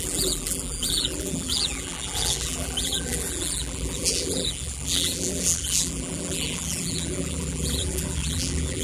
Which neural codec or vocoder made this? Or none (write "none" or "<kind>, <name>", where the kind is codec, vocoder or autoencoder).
vocoder, BigVGAN v2